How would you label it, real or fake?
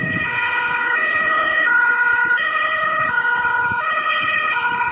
fake